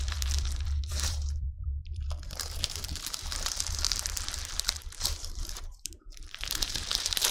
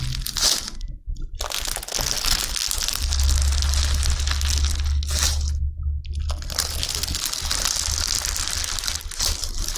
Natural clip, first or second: second